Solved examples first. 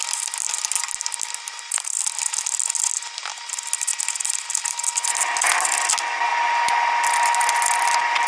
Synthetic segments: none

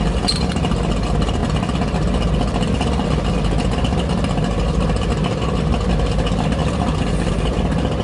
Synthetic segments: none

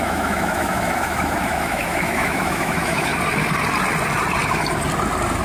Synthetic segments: 0.0-3.1 (autoencoder, DAC-VAE)

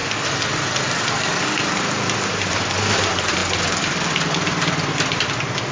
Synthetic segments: none

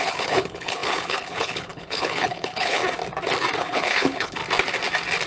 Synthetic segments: 0.0-2.8 (codec, HILCodec); 3.6-4.4